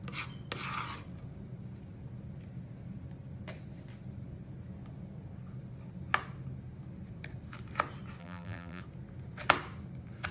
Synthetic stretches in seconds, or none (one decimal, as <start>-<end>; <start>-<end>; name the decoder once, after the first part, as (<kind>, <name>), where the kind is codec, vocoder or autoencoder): 8.2-8.8 (vocoder, BigVGAN v2)